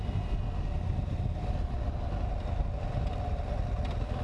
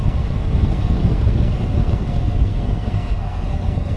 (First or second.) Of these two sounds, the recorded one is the first